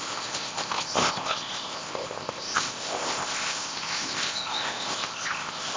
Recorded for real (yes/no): no